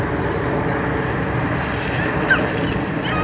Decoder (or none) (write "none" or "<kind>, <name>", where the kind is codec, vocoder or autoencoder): none